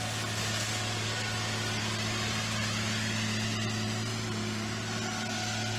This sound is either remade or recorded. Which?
recorded